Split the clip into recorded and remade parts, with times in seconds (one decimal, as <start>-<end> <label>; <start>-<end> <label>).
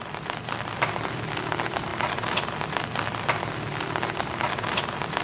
0.0-1.9 remade; 1.9-3.5 recorded; 3.5-5.2 remade